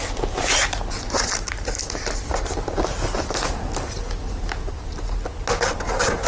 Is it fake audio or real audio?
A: real